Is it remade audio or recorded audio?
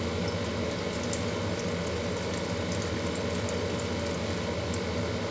recorded